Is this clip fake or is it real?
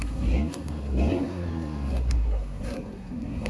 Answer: fake